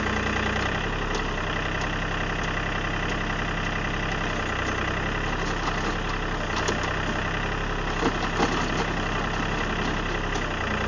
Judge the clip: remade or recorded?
recorded